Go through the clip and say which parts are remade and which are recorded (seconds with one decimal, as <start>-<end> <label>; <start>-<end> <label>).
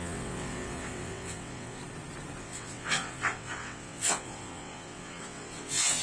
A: 0.0-1.8 remade; 1.8-2.4 recorded; 2.4-6.0 remade